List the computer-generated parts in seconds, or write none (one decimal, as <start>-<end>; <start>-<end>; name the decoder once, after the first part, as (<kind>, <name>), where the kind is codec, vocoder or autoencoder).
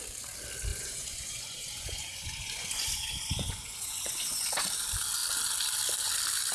0.7-4.5 (vocoder, Vocos)